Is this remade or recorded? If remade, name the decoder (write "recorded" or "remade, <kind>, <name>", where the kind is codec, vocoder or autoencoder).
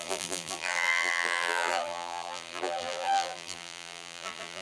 remade, vocoder, BigVGAN v2